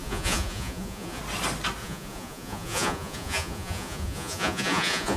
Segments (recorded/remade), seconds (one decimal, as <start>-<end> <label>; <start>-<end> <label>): 0.0-1.2 remade; 1.2-1.8 recorded; 1.8-5.2 remade